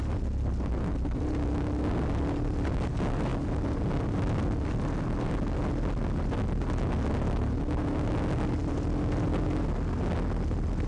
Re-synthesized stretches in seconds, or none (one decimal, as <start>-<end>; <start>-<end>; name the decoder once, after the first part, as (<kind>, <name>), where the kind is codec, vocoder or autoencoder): none

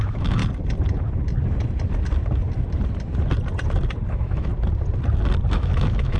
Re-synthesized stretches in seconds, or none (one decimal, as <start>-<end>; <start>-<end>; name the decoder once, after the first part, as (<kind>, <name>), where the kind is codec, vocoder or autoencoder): 0.0-0.4 (autoencoder, DAC-VAE); 4.1-4.5; 5.5-6.2

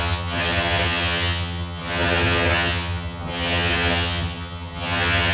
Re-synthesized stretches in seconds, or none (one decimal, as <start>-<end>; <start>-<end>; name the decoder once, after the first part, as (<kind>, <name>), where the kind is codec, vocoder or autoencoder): 0.0-5.3 (vocoder, HiFi-GAN)